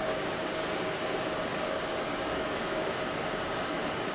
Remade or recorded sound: remade